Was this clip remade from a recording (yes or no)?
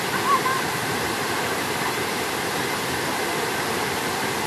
yes